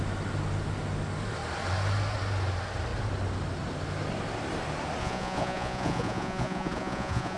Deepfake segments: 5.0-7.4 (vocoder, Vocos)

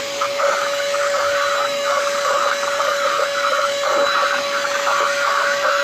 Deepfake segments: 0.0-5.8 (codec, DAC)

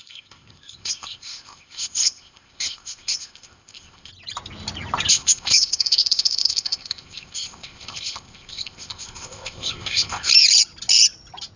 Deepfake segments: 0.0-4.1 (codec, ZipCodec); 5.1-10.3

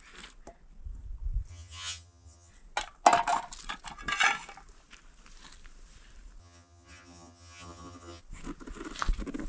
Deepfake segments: 1.5-2.5 (vocoder, HiFi-GAN); 6.4-8.2